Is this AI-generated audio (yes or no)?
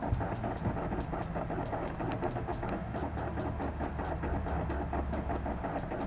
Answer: no